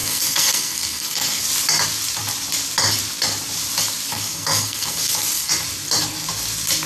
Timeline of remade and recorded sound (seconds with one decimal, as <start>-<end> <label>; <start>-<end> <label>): 0.0-1.4 remade; 1.4-4.1 recorded; 4.1-5.5 remade; 5.5-6.9 recorded